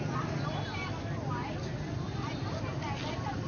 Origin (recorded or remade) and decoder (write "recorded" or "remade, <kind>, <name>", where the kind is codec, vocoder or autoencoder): recorded